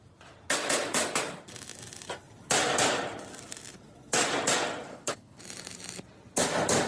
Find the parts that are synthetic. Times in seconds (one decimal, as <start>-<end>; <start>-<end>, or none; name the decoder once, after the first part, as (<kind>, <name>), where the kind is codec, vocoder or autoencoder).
4.9-5.4 (codec, HILCodec)

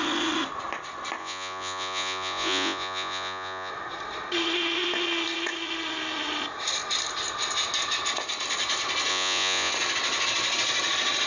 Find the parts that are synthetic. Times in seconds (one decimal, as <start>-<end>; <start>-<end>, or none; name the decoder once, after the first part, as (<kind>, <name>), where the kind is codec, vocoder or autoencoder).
1.2-3.7 (vocoder, Vocos); 9.1-9.7

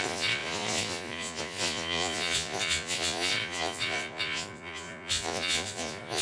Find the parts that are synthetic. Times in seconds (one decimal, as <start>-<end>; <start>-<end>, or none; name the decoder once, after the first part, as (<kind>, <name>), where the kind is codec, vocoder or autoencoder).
0.0-6.2 (vocoder, Vocos)

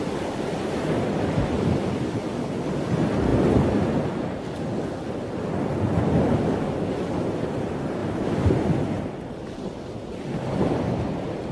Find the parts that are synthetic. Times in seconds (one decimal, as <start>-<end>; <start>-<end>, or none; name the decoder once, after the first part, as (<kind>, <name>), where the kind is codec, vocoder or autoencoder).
0.0-8.0 (vocoder, BigVGAN v2); 8.5-11.5

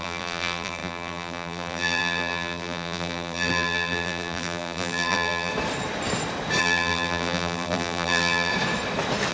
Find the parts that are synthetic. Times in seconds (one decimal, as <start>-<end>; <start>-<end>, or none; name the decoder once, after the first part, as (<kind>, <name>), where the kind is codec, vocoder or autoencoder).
0.0-5.5 (vocoder, BigVGAN v2); 6.6-8.5

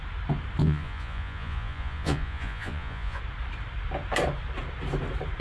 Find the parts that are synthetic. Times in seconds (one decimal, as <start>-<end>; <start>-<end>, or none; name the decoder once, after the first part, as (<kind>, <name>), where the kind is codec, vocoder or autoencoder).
0.6-3.2 (vocoder, Vocos)

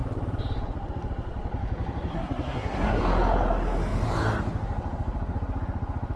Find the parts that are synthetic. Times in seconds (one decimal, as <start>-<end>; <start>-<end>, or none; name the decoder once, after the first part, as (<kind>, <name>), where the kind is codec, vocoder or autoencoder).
2.1-3.0 (codec, SNAC)